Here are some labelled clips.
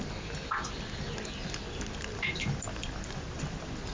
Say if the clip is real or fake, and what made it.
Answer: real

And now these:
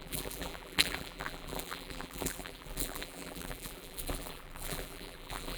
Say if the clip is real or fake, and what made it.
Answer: fake, vocoder, BigVGAN v2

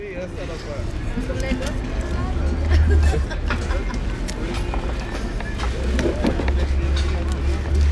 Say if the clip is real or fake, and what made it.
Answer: real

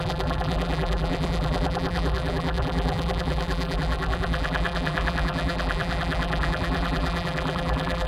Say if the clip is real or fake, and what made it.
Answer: fake, vocoder, BigVGAN v2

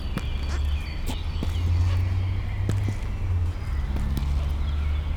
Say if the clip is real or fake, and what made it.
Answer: real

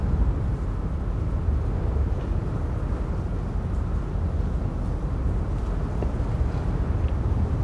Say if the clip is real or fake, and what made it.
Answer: fake, vocoder, BigVGAN v2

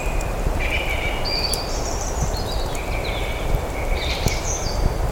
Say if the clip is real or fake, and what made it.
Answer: fake, vocoder, BigVGAN v2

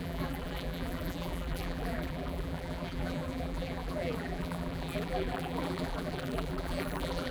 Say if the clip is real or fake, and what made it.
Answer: fake, vocoder, BigVGAN v2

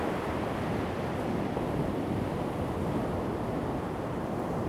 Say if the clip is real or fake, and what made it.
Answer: fake, vocoder, BigVGAN v2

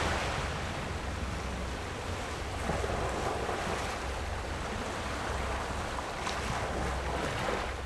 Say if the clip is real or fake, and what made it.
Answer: fake, vocoder, BigVGAN v2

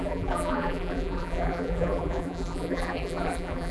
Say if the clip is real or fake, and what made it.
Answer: fake, vocoder, BigVGAN v2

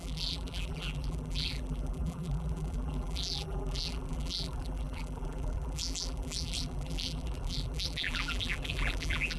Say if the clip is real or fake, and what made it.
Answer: fake, vocoder, BigVGAN v2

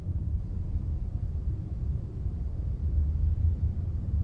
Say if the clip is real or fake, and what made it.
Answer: fake, vocoder, BigVGAN v2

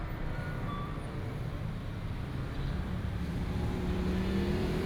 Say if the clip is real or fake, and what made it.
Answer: fake, vocoder, BigVGAN v2